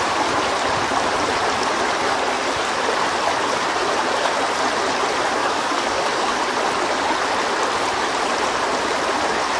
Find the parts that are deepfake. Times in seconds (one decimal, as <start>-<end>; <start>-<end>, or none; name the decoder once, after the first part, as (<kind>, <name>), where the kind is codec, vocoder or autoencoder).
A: 5.4-6.4 (codec, DAC)